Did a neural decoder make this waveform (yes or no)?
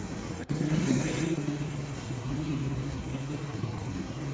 yes